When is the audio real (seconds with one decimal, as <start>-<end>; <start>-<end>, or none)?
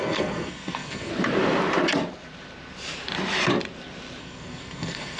1.1-4.2